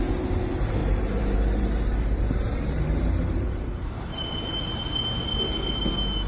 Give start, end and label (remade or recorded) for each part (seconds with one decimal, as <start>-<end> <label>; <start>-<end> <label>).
0.0-0.8 recorded; 0.8-4.6 remade; 4.6-6.3 recorded